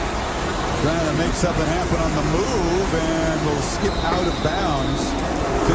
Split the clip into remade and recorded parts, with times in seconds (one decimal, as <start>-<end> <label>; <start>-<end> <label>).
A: 0.0-5.7 recorded